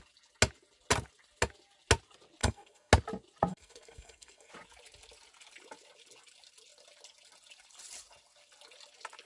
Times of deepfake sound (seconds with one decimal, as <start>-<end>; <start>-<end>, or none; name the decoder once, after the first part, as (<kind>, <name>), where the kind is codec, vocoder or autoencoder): 2.4-2.9 (codec, SNAC); 3.5-4.5